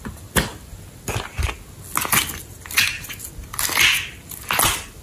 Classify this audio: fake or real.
real